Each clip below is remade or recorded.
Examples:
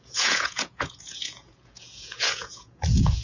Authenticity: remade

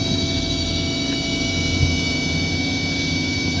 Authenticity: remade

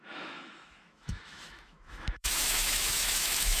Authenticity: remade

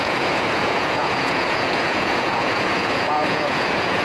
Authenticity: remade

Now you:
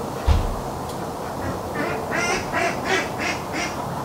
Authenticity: recorded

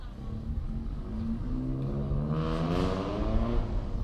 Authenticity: recorded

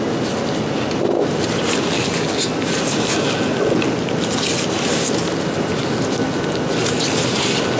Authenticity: recorded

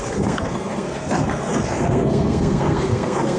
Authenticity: remade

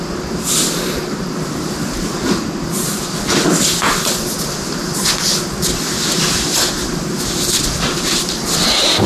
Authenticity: recorded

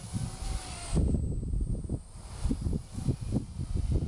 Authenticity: recorded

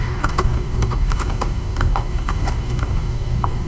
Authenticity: remade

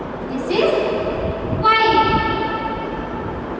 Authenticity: remade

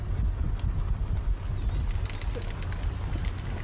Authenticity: recorded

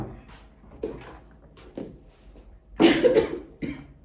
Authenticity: recorded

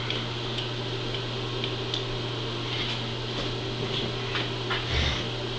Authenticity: recorded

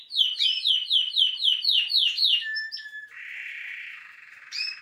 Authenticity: remade